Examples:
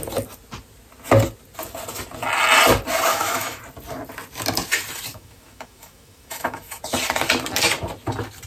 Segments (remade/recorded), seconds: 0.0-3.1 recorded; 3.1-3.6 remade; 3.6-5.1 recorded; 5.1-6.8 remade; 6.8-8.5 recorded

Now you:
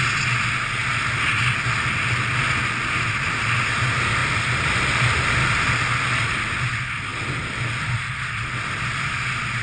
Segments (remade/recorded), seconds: 0.0-7.1 recorded; 7.1-7.9 remade; 7.9-9.6 recorded

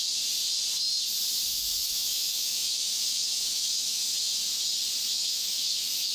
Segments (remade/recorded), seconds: 0.0-1.5 recorded; 1.5-4.4 remade; 4.4-5.1 recorded; 5.1-6.1 remade